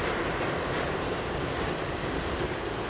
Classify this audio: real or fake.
fake